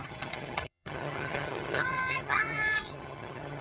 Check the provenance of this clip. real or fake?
fake